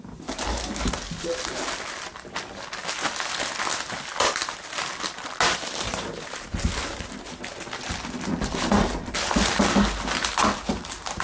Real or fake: real